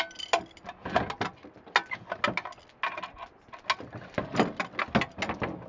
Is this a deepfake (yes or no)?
no